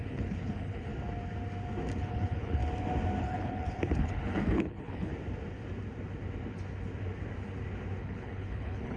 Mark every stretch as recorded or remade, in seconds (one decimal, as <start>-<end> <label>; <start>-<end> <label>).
0.0-0.9 remade; 0.9-2.0 recorded; 2.0-2.6 remade; 2.6-3.2 recorded; 3.2-5.1 remade; 5.1-8.0 recorded; 8.0-9.0 remade